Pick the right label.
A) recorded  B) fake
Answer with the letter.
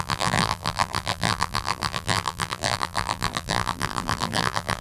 B